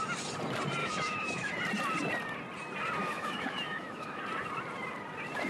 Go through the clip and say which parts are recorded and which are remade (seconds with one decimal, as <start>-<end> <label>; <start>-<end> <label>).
0.0-0.8 recorded; 0.8-1.5 remade; 1.5-3.0 recorded; 3.0-4.2 remade; 4.2-5.5 recorded